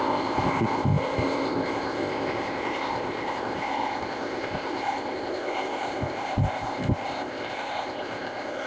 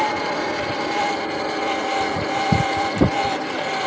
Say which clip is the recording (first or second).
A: second